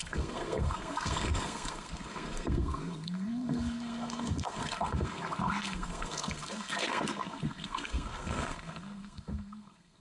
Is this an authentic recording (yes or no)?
no